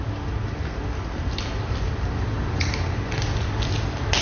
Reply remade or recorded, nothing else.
recorded